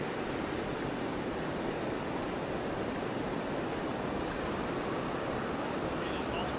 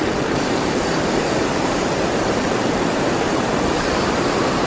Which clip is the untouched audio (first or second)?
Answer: first